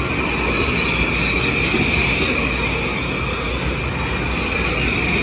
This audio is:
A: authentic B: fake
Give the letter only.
A